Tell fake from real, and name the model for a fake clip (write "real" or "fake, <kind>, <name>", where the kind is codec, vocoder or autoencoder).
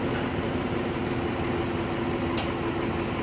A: real